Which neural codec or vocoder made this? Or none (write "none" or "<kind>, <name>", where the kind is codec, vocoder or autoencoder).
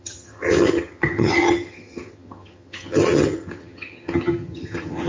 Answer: vocoder, HiFi-GAN